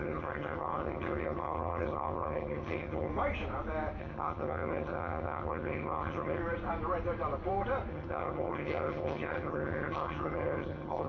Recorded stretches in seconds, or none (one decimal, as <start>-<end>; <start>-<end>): 3.1-4.0; 6.4-7.9